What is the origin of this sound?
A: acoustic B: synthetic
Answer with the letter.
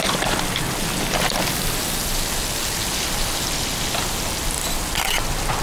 A